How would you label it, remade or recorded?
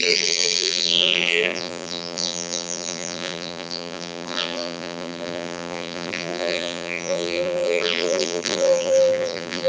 remade